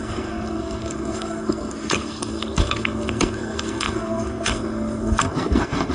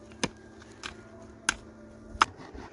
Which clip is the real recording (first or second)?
second